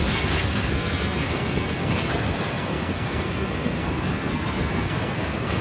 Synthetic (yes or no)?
yes